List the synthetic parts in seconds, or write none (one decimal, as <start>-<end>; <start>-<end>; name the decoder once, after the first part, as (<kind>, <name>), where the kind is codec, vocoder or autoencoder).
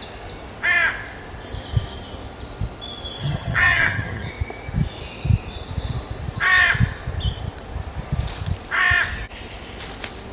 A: 3.2-4.3 (vocoder, HiFi-GAN)